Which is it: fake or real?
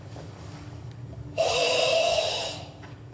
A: fake